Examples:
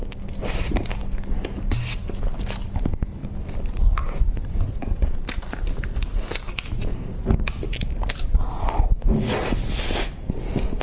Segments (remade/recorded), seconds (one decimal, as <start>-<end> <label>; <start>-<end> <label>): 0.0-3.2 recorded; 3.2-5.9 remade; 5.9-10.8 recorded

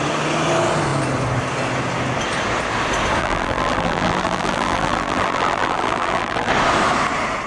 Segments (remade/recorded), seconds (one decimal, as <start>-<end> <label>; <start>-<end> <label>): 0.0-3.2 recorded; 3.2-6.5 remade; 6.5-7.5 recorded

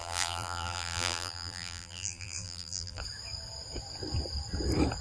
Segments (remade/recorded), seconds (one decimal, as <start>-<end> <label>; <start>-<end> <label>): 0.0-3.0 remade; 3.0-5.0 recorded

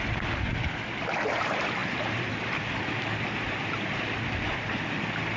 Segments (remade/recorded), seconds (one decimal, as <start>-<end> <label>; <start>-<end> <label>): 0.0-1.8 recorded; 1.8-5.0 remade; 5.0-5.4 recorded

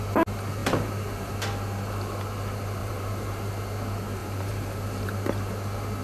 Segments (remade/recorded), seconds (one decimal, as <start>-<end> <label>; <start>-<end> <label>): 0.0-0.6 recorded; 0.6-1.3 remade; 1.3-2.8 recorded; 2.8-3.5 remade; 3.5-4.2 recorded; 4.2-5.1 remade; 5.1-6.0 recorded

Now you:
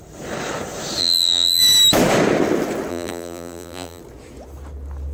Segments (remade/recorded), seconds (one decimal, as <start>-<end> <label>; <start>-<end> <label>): 0.0-1.0 recorded; 1.0-1.6 remade; 1.6-2.9 recorded; 2.9-4.0 remade; 4.0-5.1 recorded

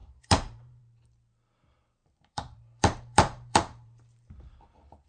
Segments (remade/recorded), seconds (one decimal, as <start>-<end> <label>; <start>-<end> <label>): 0.0-0.8 remade; 0.8-2.0 recorded; 2.0-4.3 remade; 4.3-5.1 recorded

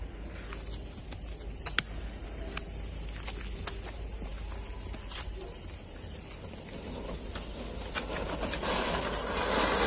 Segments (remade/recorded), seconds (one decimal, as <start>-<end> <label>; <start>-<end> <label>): 0.0-9.9 recorded